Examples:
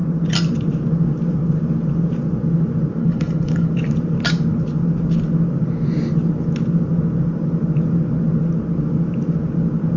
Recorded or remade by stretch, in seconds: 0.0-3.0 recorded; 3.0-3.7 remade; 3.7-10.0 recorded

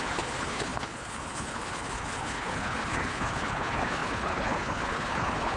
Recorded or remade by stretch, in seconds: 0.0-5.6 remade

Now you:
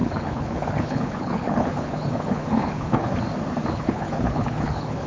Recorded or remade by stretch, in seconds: 0.0-3.1 remade; 3.1-3.7 recorded; 3.7-5.1 remade

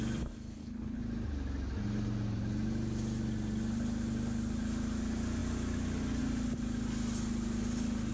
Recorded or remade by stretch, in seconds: 0.0-0.5 recorded; 0.5-1.0 remade; 1.0-8.1 recorded

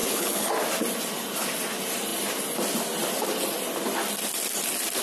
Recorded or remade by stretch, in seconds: 0.0-0.5 remade; 0.5-5.0 recorded

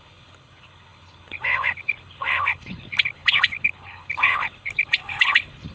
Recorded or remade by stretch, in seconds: 0.0-5.7 remade

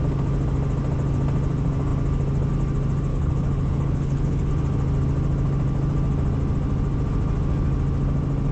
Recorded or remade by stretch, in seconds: 0.0-3.1 recorded; 3.1-4.5 remade; 4.5-8.5 recorded